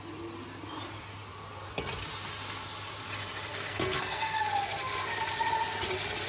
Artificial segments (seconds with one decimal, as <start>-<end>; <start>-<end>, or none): 3.5-4.4